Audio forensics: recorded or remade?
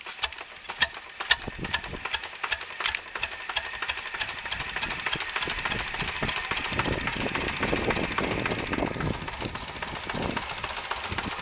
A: recorded